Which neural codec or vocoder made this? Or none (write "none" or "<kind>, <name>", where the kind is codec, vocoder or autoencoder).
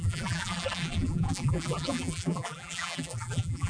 vocoder, BigVGAN v2